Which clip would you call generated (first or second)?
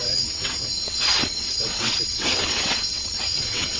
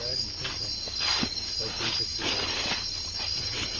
first